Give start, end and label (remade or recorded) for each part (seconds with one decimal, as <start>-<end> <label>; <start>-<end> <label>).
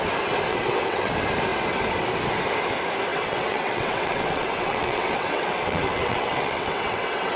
0.0-0.5 recorded; 0.5-1.1 remade; 1.1-3.1 recorded; 3.1-7.4 remade